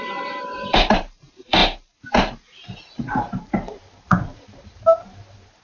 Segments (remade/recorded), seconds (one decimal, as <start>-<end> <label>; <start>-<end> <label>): 0.0-5.6 remade